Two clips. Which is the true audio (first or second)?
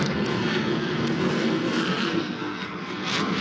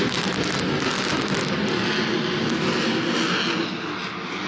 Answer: second